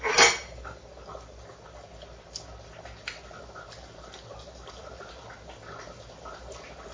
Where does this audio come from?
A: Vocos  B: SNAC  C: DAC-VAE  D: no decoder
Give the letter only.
D